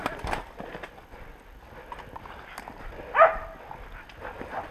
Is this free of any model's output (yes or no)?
yes